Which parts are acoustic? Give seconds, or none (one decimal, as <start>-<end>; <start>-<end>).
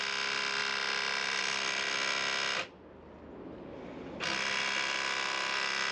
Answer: 0.0-5.9